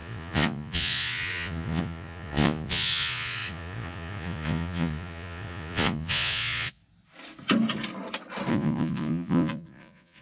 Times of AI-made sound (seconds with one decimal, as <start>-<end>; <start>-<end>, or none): 0.0-6.8; 8.5-10.2